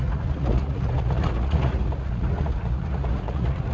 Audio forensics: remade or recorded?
remade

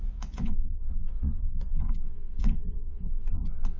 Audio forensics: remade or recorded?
remade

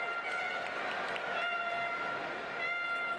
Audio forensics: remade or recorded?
recorded